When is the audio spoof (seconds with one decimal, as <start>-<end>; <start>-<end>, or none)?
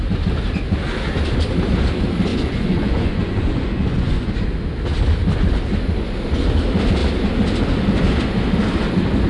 2.3-4.3